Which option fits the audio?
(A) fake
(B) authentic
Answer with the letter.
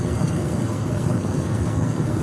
A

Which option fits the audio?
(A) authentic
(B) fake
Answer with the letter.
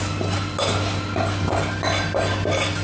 A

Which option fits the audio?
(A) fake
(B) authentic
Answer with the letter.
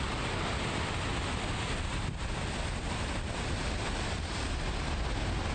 B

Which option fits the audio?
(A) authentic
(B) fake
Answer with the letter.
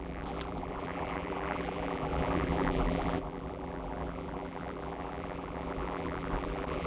B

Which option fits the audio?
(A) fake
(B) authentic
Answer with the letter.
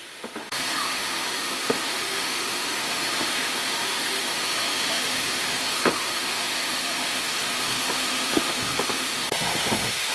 A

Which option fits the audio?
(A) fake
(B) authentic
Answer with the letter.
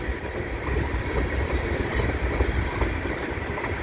A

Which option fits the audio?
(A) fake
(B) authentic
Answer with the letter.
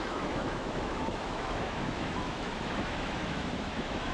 A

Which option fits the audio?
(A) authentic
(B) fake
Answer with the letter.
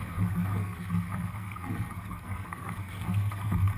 B